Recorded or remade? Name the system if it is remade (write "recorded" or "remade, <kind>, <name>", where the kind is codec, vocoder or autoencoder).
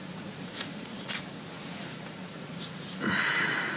remade, vocoder, Vocos